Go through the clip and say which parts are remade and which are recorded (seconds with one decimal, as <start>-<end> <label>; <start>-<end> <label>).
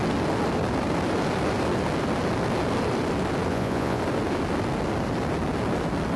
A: 0.0-3.5 recorded; 3.5-4.0 remade; 4.0-6.2 recorded